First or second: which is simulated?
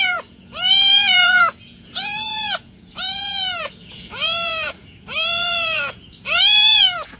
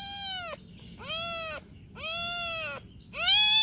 first